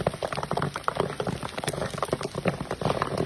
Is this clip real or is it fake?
real